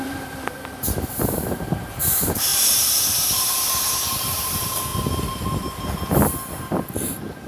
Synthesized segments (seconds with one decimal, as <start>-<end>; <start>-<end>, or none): 0.0-4.9